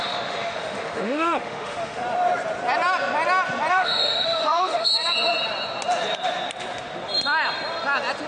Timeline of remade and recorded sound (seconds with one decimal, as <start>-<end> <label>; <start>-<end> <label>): 0.0-2.0 remade; 2.0-3.7 recorded; 3.7-4.9 remade; 4.9-8.3 recorded